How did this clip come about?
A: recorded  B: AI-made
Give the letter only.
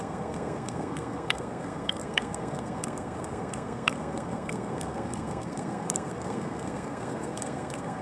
B